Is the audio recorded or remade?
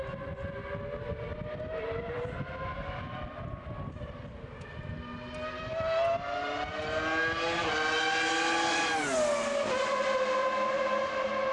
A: recorded